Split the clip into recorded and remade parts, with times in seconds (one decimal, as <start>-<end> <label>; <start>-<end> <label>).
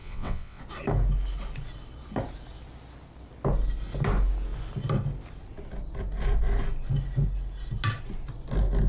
0.0-0.6 remade; 0.6-8.9 recorded